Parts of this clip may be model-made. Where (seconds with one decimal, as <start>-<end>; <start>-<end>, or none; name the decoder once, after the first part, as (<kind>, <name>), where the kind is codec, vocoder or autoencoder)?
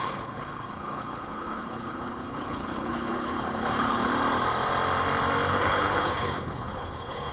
0.0-4.1 (codec, HILCodec); 5.5-7.3